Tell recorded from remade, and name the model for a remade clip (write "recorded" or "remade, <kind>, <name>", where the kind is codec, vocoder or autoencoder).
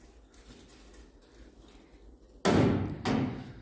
recorded